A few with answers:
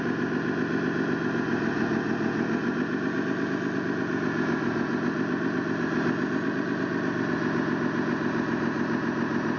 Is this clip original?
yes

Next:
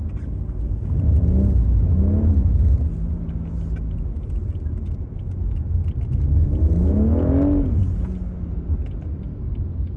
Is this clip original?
yes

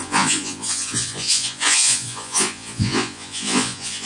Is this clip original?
no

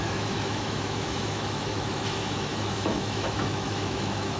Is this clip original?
no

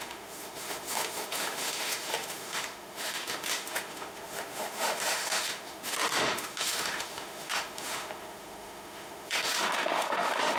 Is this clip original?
no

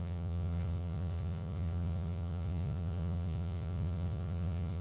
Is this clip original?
no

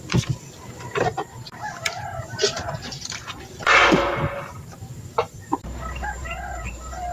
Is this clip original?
no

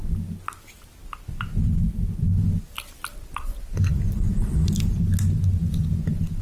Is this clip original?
yes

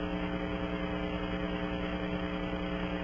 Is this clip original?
yes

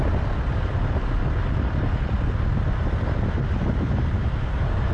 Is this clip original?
yes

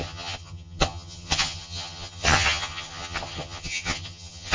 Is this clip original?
no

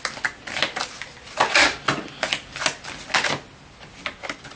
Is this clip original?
yes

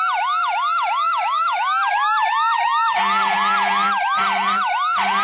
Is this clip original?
yes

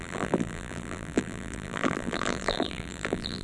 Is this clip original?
no